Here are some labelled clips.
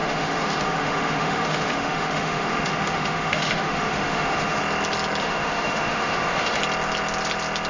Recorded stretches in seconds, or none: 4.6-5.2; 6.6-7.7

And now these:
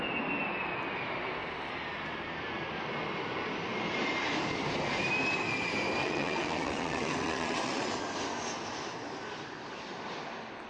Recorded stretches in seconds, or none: 0.0-6.0; 7.9-10.7

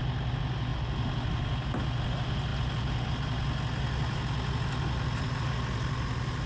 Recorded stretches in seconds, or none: 0.0-6.5

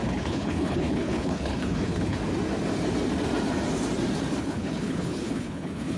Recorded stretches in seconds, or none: 2.2-4.4

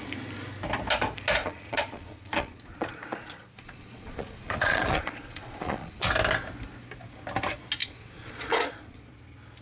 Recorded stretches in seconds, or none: 0.0-1.4; 6.1-7.8; 9.0-9.6

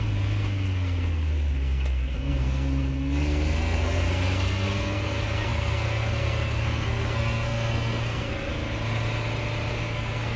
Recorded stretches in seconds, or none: 8.5-9.7

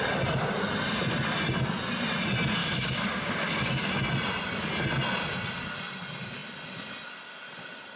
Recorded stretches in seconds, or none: 0.0-2.6; 3.9-8.0

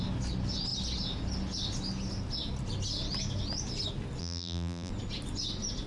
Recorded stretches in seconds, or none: 0.0-4.2; 4.9-5.9